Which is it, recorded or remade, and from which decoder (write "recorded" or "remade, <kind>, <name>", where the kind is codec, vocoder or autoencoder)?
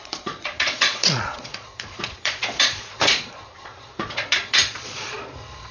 remade, vocoder, Vocos